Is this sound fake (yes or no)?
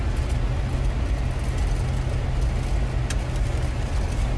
no